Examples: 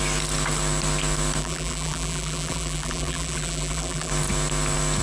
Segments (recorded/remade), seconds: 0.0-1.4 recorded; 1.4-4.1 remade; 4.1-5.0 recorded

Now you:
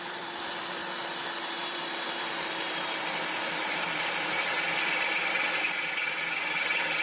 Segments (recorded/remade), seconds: 0.0-0.8 remade; 0.8-1.4 recorded; 1.4-7.0 remade